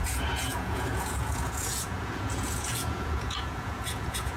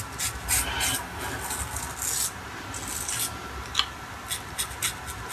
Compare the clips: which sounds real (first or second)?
second